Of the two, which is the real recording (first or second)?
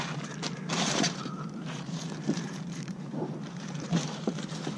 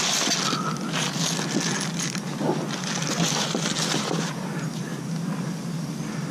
second